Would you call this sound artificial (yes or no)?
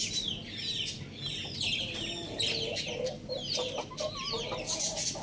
no